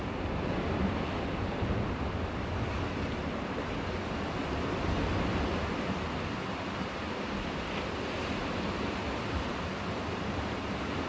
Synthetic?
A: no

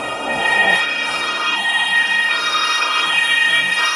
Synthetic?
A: yes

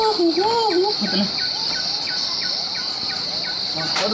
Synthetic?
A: no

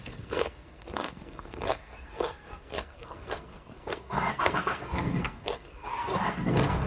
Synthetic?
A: yes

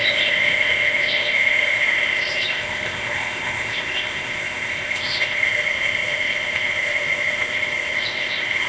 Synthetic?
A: yes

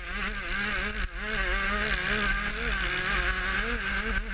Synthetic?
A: no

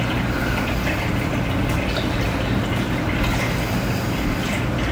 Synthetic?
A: no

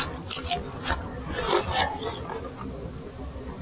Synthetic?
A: no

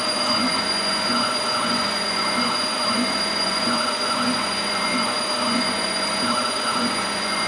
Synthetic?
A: yes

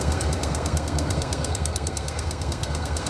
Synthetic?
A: yes